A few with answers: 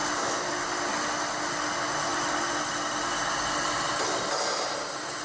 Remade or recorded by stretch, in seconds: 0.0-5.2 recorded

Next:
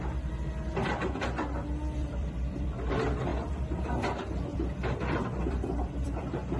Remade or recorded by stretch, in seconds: 0.0-2.0 recorded; 2.0-2.9 remade; 2.9-3.3 recorded; 3.3-3.8 remade; 3.8-4.5 recorded; 4.5-6.6 remade

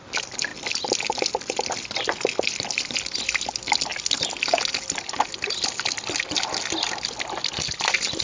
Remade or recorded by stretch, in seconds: 0.0-8.2 recorded

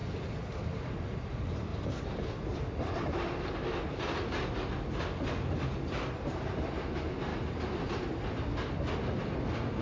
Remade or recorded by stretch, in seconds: 0.0-1.7 recorded; 1.7-2.9 remade; 2.9-9.8 recorded

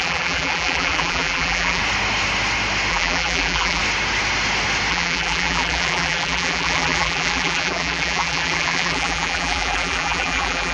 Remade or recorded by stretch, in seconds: 0.0-1.8 remade; 1.8-2.9 recorded; 2.9-3.8 remade; 3.8-4.9 recorded; 4.9-10.7 remade